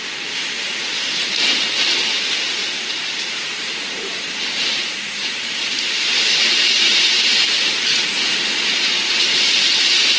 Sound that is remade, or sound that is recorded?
remade